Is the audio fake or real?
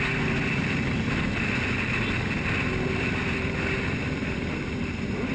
real